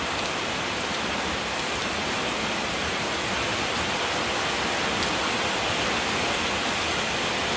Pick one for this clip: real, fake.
real